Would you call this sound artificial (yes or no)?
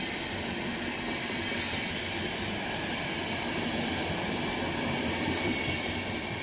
no